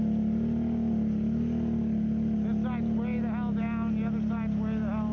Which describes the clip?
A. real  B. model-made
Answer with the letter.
A